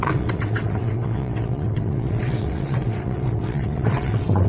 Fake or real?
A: fake